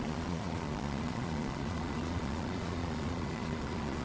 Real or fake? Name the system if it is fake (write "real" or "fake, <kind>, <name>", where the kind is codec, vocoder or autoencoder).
fake, vocoder, Vocos